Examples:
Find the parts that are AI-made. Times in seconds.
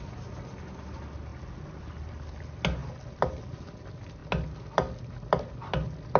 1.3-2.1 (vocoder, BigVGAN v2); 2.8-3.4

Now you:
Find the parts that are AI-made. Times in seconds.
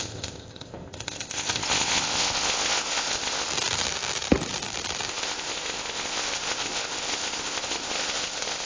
0.0-3.5 (codec, ZipCodec); 5.1-8.7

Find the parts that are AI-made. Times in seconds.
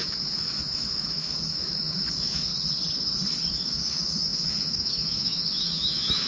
0.0-2.5 (autoencoder, DAC-VAE); 3.5-6.3